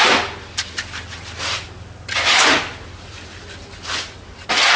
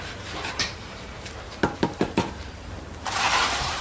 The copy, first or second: second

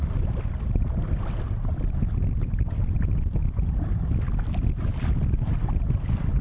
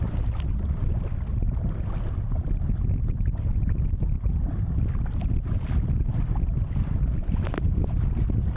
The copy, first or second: second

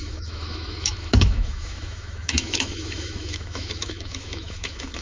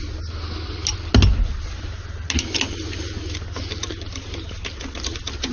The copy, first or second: first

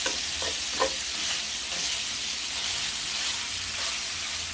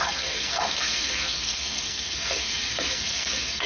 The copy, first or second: second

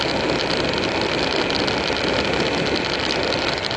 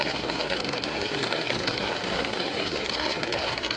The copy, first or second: second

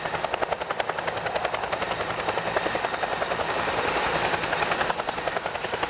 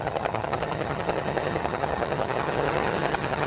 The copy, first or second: second